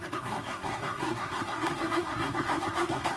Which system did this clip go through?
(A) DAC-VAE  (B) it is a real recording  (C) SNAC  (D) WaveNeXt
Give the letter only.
C